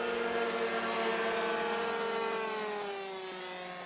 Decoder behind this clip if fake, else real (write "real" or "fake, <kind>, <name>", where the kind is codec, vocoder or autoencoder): real